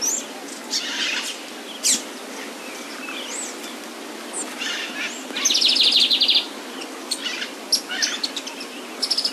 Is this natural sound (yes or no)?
yes